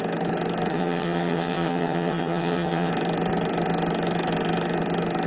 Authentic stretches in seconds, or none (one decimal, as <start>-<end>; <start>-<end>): 0.0-0.7; 2.9-5.3